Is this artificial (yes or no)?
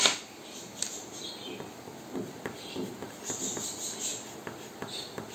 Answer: no